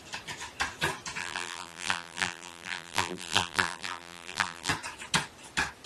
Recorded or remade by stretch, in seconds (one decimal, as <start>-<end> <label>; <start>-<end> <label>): 0.0-1.2 recorded; 1.2-4.7 remade; 4.7-5.9 recorded